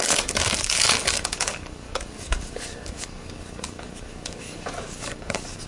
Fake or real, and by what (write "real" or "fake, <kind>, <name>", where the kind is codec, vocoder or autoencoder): fake, codec, DAC